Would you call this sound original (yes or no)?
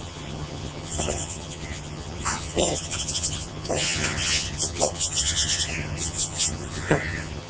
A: no